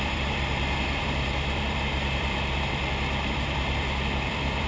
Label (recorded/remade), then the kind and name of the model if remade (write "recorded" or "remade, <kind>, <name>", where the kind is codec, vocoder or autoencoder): remade, vocoder, BigVGAN v2